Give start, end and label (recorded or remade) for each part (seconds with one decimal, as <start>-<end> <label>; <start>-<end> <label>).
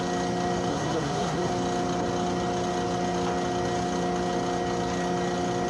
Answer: 0.0-0.7 recorded; 0.7-1.5 remade; 1.5-5.7 recorded